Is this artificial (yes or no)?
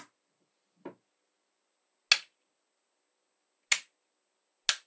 no